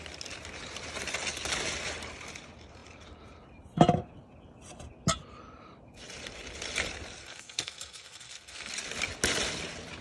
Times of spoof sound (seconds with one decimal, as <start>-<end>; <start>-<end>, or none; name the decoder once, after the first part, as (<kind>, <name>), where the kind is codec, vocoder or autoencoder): 7.2-8.7 (codec, SNAC)